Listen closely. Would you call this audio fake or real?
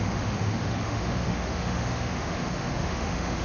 fake